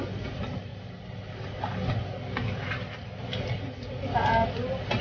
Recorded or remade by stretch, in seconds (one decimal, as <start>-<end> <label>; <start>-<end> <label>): 0.0-5.0 recorded